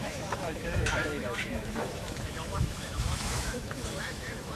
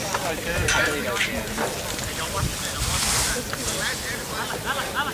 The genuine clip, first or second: second